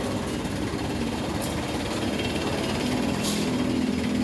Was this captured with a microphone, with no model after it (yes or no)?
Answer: yes